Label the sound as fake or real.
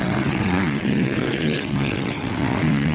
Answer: fake